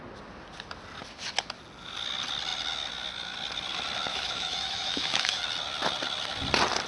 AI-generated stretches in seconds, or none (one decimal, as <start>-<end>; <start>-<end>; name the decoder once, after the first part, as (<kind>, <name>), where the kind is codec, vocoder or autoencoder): 4.1-5.4 (autoencoder, DAC-VAE)

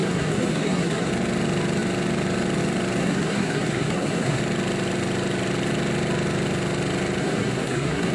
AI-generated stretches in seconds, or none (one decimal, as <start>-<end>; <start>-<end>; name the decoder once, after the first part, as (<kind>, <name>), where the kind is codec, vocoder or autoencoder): 0.0-1.1 (codec, SNAC); 3.0-4.4; 7.2-8.1

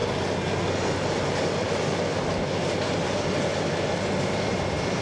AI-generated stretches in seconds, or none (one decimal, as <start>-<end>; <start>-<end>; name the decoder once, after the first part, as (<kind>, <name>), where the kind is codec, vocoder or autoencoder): 3.0-3.5 (vocoder, BigVGAN v2); 4.2-5.0